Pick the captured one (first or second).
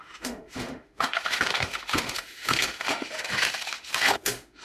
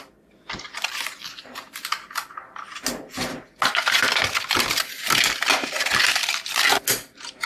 second